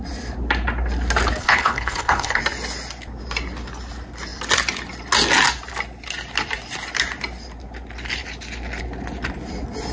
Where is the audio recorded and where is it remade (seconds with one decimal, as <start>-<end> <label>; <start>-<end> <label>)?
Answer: 0.0-1.4 recorded; 1.4-2.4 remade; 2.4-9.9 recorded